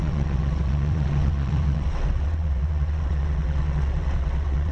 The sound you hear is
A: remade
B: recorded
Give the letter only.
A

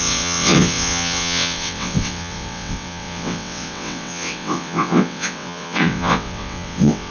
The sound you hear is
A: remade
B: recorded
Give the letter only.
A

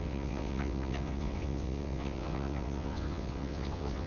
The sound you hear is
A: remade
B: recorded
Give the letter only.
A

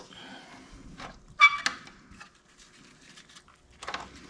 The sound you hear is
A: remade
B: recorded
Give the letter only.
B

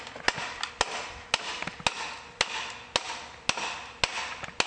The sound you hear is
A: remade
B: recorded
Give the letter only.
B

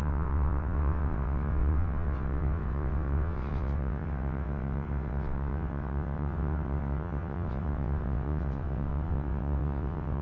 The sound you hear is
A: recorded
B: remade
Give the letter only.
B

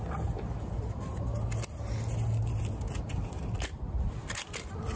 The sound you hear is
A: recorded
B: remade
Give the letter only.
A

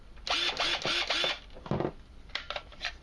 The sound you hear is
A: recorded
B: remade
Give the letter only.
A